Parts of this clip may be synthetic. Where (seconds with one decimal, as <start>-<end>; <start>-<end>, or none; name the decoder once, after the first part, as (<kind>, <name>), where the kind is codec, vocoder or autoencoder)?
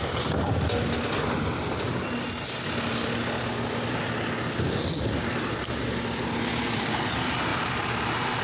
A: 7.5-8.4 (vocoder, BigVGAN v2)